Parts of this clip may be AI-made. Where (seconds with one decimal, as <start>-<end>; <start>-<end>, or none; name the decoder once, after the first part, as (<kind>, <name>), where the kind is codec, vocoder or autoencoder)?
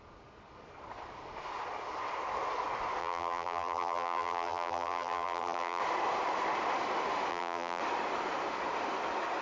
3.0-5.8 (vocoder, BigVGAN v2); 7.3-7.8